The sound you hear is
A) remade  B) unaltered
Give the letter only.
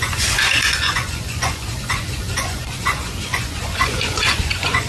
A